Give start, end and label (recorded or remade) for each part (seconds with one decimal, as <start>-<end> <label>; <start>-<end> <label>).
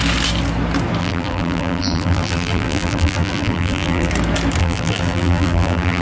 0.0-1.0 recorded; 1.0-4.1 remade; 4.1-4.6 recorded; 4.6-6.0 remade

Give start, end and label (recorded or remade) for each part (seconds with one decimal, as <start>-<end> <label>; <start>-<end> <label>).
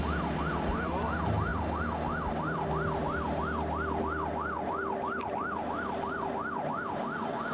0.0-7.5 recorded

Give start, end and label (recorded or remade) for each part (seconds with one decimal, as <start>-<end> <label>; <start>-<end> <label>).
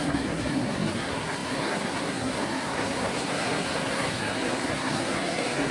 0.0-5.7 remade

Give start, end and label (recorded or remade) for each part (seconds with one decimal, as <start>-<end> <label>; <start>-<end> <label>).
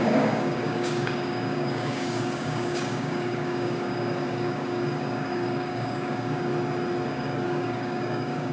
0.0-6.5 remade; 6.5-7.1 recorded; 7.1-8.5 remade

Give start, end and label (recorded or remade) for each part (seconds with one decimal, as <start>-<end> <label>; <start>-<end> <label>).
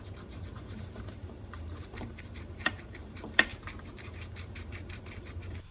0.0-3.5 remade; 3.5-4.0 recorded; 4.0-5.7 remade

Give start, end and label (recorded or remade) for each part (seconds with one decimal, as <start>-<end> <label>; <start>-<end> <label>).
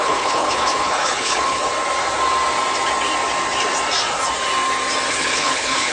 0.0-1.7 remade; 1.7-5.1 recorded; 5.1-5.9 remade